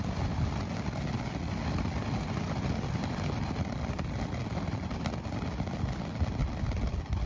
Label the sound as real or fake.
real